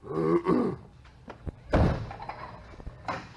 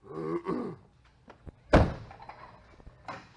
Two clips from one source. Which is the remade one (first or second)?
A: first